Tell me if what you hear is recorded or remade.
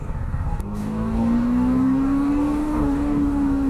remade